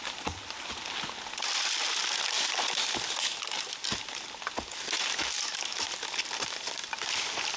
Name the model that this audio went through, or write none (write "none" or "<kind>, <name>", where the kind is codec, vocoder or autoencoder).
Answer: none